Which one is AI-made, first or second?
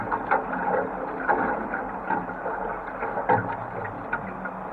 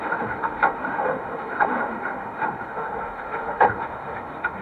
second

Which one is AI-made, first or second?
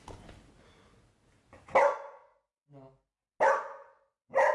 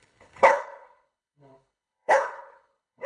second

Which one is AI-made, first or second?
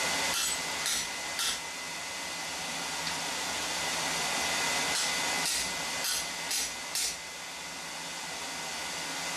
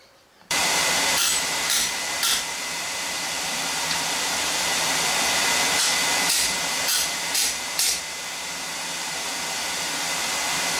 second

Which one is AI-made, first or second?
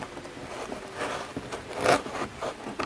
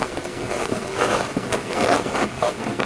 second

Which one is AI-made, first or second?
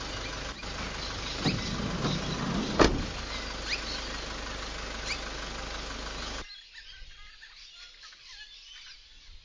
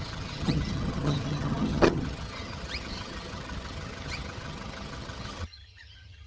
second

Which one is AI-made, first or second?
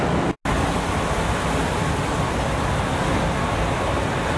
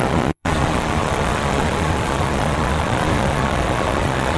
second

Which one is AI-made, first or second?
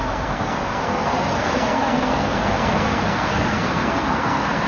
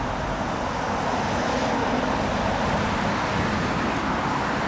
first